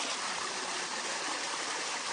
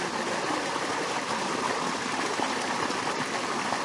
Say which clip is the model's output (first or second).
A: first